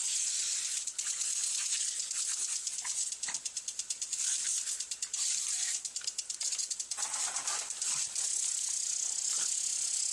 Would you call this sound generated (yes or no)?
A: no